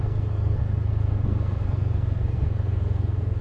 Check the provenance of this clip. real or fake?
fake